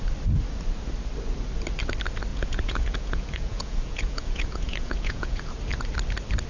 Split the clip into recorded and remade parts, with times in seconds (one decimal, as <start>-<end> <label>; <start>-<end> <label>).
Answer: 0.0-2.3 recorded; 2.3-5.5 remade; 5.5-6.5 recorded